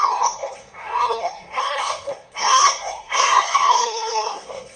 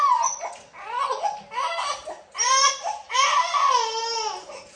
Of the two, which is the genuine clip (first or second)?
second